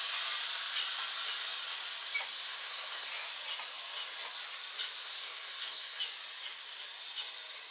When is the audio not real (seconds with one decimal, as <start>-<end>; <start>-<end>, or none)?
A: 2.3-3.1; 5.0-6.0